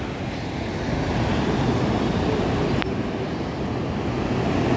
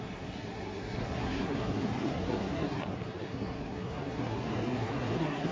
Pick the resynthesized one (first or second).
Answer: second